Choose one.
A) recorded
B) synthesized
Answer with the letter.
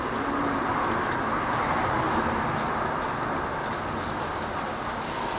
A